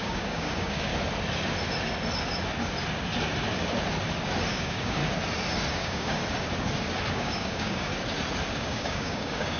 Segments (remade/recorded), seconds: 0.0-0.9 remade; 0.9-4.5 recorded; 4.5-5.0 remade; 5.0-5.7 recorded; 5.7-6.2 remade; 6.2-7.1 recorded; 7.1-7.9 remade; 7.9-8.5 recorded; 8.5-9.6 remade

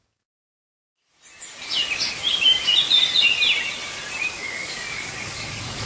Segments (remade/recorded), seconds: 0.0-0.8 remade; 0.8-4.3 recorded; 4.3-5.9 remade

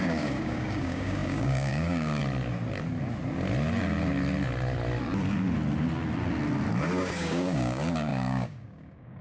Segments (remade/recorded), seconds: 0.0-2.2 remade; 2.2-6.8 recorded; 6.8-9.2 remade